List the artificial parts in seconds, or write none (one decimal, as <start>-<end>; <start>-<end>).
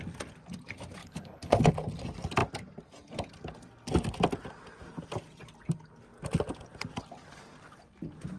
1.0-1.7